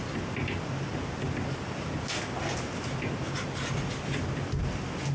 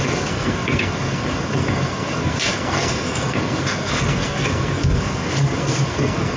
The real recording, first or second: first